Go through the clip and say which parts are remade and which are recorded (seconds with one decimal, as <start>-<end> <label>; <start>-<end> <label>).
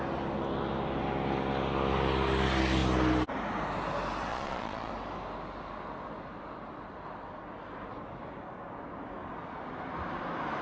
0.0-4.3 recorded; 4.3-4.9 remade; 4.9-10.6 recorded